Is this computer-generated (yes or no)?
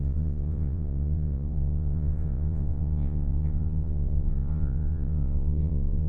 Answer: yes